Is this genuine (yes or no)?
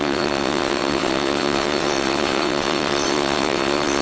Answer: no